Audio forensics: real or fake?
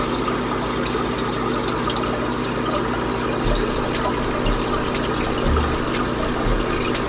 real